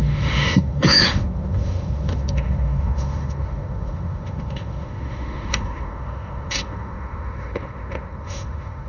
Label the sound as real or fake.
fake